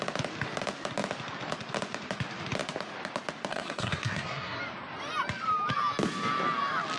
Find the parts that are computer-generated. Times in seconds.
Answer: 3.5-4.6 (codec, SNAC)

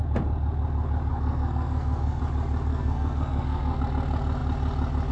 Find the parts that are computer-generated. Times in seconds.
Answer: 1.1-2.2 (codec, SNAC); 2.7-3.8